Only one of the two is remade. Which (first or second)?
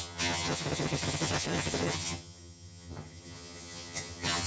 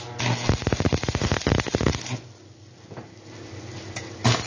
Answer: first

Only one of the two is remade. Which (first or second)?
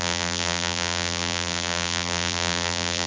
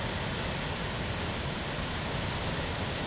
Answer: first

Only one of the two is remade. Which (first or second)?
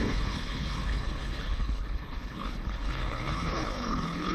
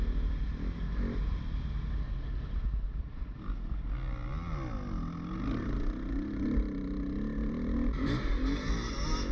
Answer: first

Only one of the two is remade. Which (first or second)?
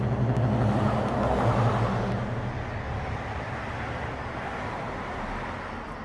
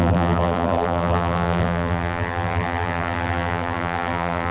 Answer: second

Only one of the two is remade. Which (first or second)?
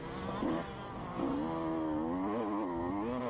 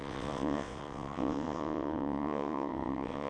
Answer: second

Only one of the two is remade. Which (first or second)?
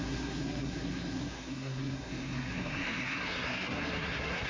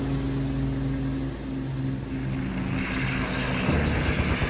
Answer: first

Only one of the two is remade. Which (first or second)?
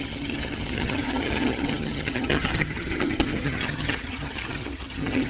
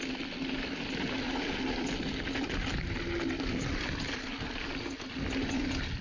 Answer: first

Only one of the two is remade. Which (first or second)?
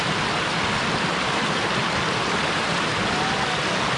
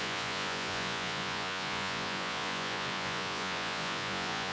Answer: second